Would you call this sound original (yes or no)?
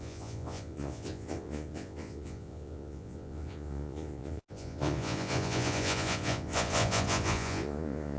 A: no